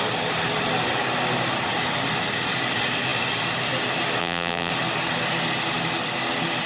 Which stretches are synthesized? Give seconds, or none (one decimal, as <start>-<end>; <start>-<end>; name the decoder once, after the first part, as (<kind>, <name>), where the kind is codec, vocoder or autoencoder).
4.2-4.7 (vocoder, BigVGAN v2)